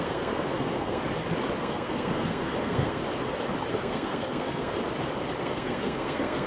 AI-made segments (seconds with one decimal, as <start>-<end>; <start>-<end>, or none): 0.0-1.0; 1.6-3.0; 3.7-4.7; 5.4-6.5